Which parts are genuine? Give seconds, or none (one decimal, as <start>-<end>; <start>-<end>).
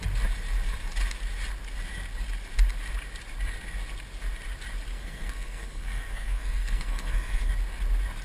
0.0-4.9; 7.5-8.2